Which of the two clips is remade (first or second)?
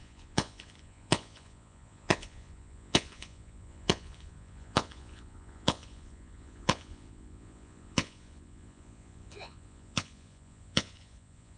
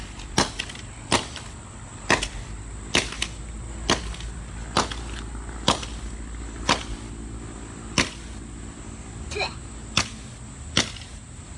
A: first